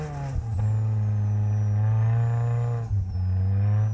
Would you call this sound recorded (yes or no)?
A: yes